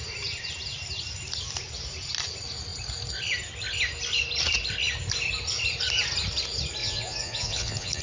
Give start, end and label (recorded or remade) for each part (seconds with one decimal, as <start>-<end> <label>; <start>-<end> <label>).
0.0-6.8 recorded; 6.8-8.0 remade